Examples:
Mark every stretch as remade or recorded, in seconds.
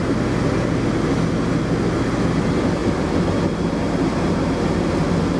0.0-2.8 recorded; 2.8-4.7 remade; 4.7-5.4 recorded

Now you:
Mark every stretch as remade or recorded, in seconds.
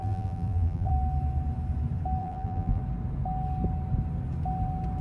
0.0-0.9 remade; 0.9-2.2 recorded; 2.2-2.8 remade; 2.8-5.0 recorded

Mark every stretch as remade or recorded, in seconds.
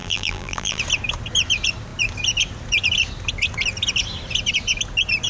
0.0-0.8 remade; 0.8-5.3 recorded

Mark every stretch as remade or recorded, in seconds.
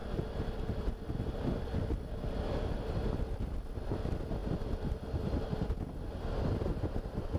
0.0-7.4 recorded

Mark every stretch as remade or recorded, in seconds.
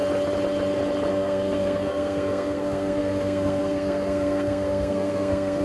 0.0-1.1 recorded; 1.1-5.6 remade